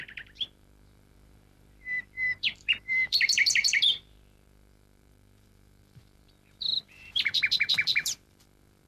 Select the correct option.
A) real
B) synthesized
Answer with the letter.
B